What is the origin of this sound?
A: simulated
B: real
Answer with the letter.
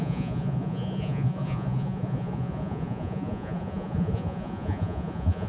A